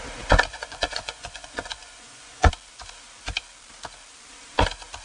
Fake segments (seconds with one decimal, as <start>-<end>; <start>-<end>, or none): 0.5-2.5